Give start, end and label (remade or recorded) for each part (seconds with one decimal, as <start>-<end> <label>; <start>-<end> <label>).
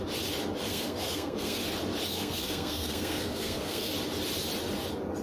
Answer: 0.0-0.7 recorded; 0.7-1.6 remade; 1.6-2.1 recorded; 2.1-3.9 remade; 3.9-5.2 recorded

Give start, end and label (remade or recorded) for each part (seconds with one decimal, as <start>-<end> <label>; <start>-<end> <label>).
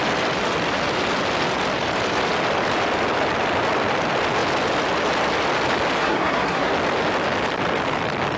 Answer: 0.0-6.0 recorded; 6.0-6.7 remade; 6.7-8.4 recorded